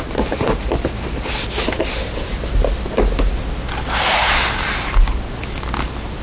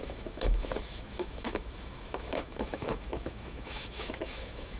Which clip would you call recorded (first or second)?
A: first